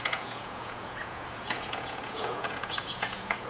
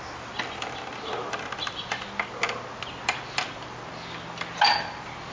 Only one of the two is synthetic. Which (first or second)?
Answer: first